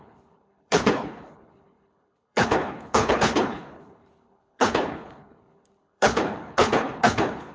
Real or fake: fake